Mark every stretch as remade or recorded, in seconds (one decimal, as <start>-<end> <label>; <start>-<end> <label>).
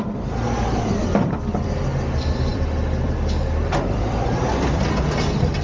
0.0-2.5 recorded; 2.5-4.5 remade; 4.5-5.6 recorded